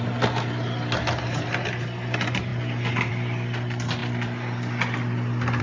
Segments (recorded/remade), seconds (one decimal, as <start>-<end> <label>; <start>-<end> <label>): 0.0-5.6 recorded